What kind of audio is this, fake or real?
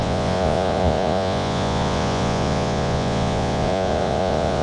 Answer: fake